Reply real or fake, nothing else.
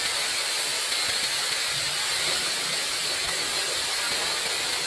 real